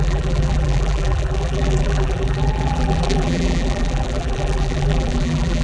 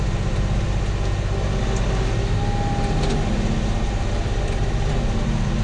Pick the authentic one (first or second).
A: second